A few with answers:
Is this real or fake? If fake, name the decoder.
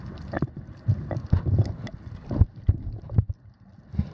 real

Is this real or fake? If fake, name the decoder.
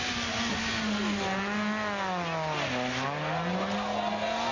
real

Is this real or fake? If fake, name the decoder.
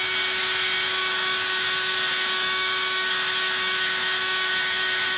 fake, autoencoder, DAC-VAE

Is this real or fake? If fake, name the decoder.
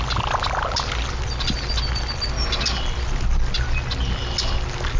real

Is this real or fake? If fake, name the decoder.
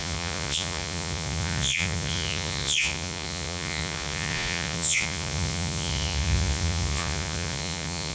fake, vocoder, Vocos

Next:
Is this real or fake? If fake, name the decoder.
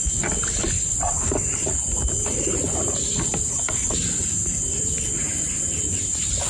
real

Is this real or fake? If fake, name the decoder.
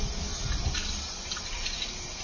real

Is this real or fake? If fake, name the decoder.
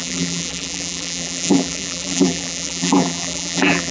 fake, vocoder, BigVGAN v2